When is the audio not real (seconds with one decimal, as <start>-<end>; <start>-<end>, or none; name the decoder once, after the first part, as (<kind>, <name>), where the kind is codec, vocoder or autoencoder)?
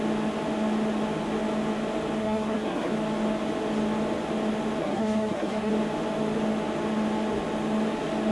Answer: 2.2-2.9 (codec, SNAC); 4.8-5.7